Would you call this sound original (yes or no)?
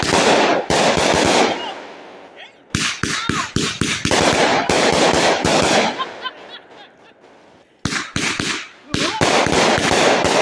yes